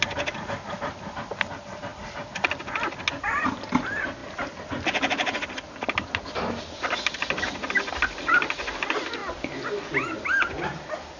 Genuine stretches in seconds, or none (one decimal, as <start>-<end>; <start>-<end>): 1.9-3.1; 4.2-6.6